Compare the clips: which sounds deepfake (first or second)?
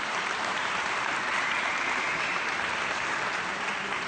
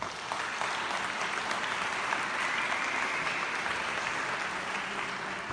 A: first